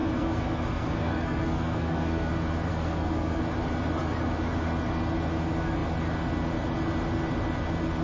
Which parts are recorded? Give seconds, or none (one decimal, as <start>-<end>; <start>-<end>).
2.3-2.7; 3.4-8.0